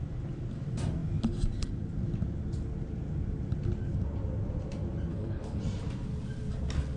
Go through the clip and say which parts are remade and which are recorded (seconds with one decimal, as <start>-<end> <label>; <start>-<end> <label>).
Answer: 0.0-5.1 recorded; 5.1-5.6 remade; 5.6-7.0 recorded